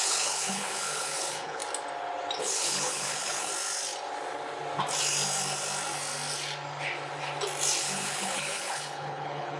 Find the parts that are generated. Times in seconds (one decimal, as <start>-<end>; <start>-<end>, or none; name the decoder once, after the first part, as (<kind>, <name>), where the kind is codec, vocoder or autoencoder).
0.0-1.6 (codec, HILCodec); 2.4-3.5; 7.8-9.6